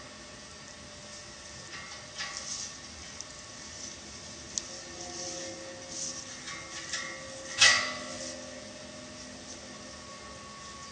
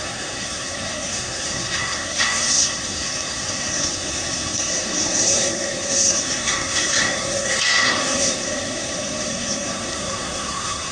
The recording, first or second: first